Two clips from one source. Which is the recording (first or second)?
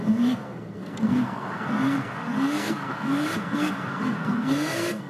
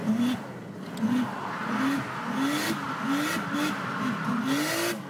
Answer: second